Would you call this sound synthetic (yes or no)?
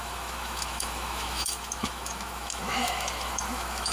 yes